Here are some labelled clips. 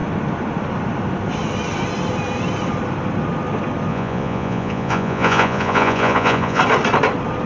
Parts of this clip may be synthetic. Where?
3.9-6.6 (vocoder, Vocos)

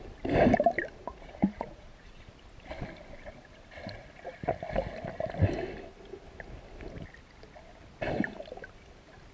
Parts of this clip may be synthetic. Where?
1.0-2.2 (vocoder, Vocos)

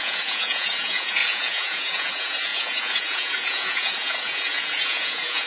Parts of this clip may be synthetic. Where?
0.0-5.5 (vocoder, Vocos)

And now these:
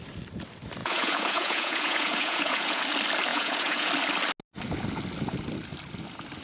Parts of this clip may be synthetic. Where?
0.8-2.8 (vocoder, Vocos); 3.3-3.9

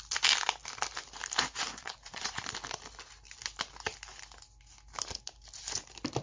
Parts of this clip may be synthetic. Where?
1.7-2.4 (vocoder, Vocos)